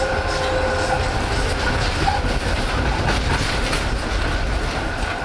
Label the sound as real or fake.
real